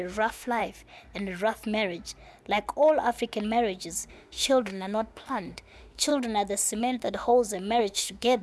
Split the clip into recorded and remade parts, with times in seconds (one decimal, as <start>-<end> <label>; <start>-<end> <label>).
0.0-0.6 remade; 0.6-4.1 recorded; 4.1-6.1 remade; 6.1-6.8 recorded; 6.8-7.3 remade; 7.3-7.8 recorded; 7.8-8.4 remade

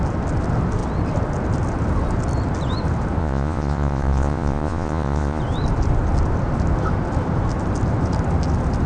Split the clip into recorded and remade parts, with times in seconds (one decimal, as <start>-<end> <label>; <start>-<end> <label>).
0.0-3.2 recorded; 3.2-5.4 remade; 5.4-8.9 recorded

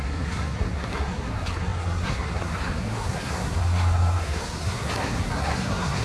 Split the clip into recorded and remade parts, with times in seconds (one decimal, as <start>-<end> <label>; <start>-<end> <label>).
0.0-6.0 remade

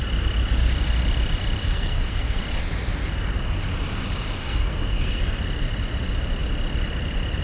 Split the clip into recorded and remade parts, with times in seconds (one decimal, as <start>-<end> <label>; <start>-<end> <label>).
0.0-1.6 recorded; 1.6-2.4 remade; 2.4-4.4 recorded; 4.4-5.2 remade; 5.2-7.4 recorded

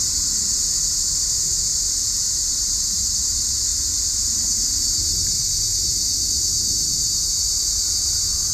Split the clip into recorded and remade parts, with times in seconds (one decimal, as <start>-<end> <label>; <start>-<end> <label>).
0.0-1.5 recorded; 1.5-2.2 remade; 2.2-8.5 recorded